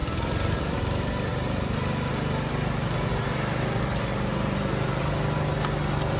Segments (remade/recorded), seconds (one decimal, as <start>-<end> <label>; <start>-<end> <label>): 0.0-1.3 recorded; 1.3-5.0 remade; 5.0-6.2 recorded